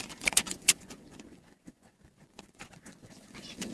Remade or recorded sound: remade